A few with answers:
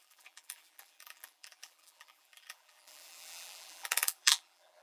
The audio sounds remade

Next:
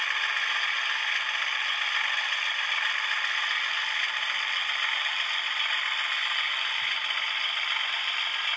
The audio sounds remade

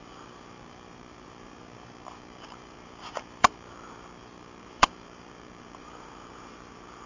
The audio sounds remade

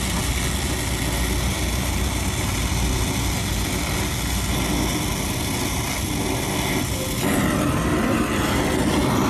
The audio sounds recorded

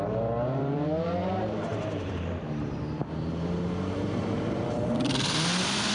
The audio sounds remade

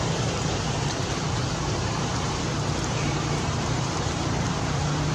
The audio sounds remade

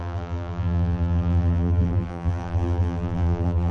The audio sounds remade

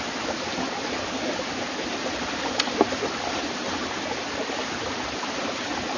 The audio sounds recorded